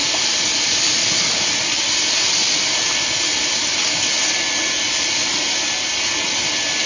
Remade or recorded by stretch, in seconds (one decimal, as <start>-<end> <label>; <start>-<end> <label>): 0.0-3.9 remade; 3.9-6.9 recorded